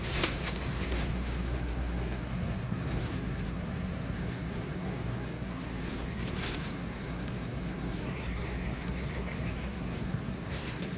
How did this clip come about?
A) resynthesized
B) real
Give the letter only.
A